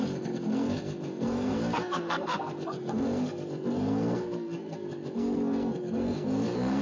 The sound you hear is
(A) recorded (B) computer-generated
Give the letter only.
B